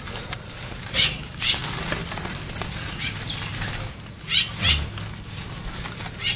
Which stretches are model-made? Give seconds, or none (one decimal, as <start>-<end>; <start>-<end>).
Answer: 0.8-1.7